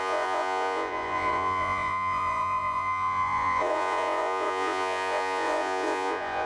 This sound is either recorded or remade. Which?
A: remade